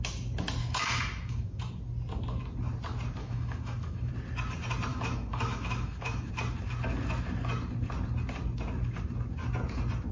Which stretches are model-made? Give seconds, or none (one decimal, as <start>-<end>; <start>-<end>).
0.6-1.6; 3.2-4.1; 4.9-6.3